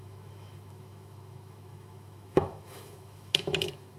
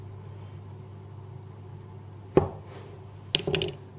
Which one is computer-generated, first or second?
first